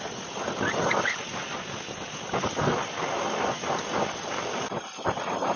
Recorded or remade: recorded